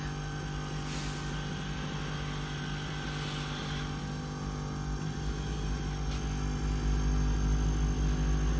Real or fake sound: real